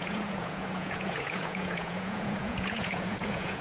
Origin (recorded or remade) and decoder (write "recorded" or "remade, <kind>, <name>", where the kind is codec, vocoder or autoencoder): remade, vocoder, Vocos